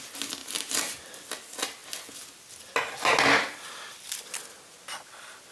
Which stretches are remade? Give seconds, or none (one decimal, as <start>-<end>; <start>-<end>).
0.4-1.1